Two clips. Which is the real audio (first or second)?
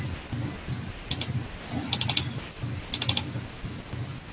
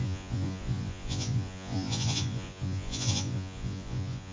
first